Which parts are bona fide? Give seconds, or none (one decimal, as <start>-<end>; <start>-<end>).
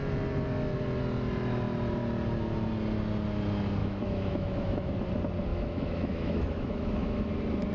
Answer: 0.0-3.8; 4.9-5.5; 7.3-7.7